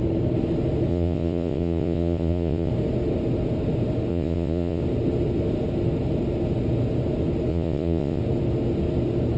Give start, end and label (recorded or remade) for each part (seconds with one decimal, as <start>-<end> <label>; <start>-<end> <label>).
0.0-0.9 recorded; 0.9-2.7 remade; 2.7-4.1 recorded; 4.1-4.8 remade; 4.8-7.5 recorded; 7.5-8.2 remade; 8.2-9.4 recorded